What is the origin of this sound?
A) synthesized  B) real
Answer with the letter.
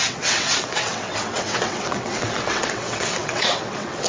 A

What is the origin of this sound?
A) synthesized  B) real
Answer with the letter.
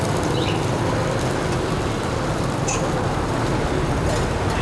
B